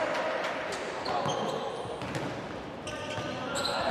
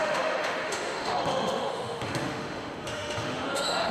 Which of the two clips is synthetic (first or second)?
second